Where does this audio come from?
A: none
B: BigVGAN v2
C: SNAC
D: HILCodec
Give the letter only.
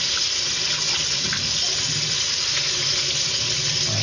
A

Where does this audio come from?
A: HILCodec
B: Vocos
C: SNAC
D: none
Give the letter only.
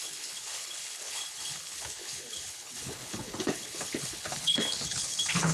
A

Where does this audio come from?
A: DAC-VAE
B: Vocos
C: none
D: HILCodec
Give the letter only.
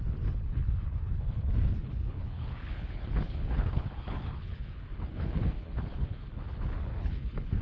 D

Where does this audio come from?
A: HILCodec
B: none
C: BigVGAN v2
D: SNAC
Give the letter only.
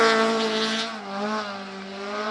B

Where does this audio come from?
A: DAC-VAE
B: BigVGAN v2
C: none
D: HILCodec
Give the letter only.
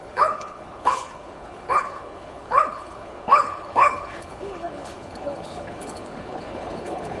D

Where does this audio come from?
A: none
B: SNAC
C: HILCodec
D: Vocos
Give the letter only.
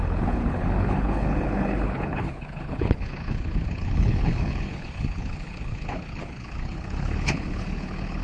C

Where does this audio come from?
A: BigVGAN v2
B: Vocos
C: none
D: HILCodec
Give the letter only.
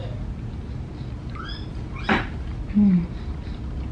C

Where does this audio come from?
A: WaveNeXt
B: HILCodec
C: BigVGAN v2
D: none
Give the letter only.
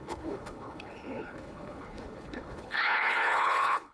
B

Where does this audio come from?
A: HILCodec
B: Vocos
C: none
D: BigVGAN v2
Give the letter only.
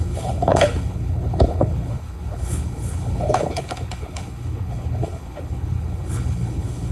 A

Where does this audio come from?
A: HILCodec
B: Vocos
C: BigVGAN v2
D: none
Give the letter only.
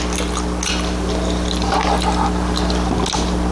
D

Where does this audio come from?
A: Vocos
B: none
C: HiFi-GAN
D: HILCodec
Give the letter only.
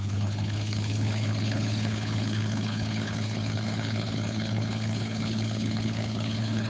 D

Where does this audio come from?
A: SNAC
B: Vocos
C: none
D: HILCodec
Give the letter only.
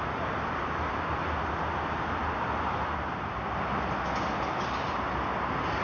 C